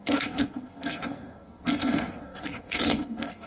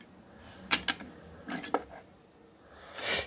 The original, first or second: second